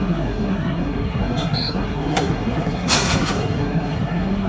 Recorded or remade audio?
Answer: remade